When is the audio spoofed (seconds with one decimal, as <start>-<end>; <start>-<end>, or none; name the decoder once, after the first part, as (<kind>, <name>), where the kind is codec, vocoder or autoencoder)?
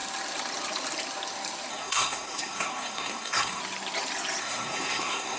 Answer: 1.7-3.6 (codec, SNAC); 4.4-5.4